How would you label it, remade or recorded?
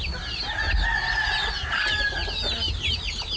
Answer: recorded